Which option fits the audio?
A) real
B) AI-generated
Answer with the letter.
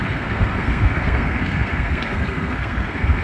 B